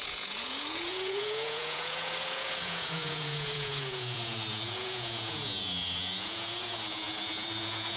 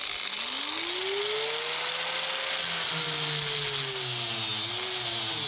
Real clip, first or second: second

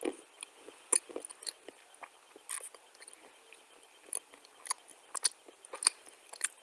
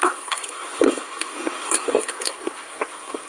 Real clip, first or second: first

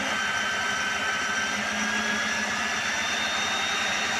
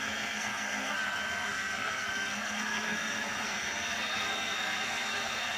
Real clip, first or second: first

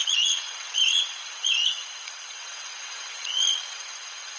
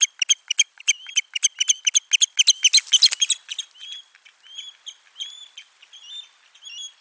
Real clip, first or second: second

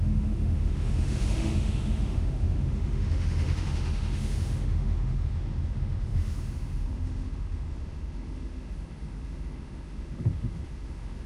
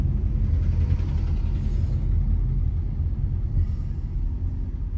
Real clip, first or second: second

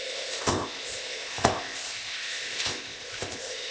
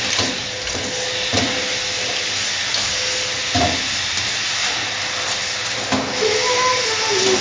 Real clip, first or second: second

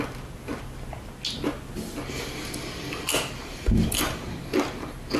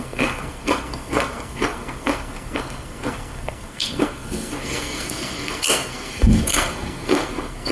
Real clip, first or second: first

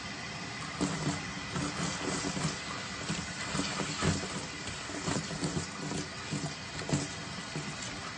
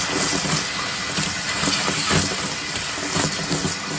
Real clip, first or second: second